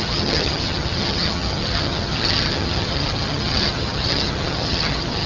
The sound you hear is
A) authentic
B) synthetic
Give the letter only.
B